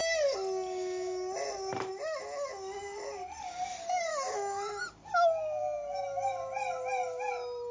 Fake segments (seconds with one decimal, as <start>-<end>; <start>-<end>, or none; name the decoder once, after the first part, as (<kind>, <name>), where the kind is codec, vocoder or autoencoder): 4.1-4.8 (autoencoder, DAC-VAE)